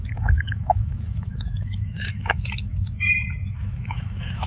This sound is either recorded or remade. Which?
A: remade